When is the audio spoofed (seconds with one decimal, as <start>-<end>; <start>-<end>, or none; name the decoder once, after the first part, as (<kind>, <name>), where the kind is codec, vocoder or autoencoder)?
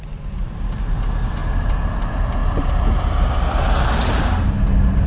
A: 1.4-1.9 (vocoder, BigVGAN v2); 2.4-3.8